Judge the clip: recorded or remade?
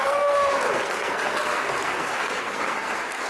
remade